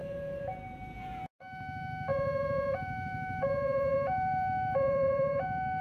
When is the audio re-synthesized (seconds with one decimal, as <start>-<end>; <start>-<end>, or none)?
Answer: 0.0-1.3; 2.1-5.8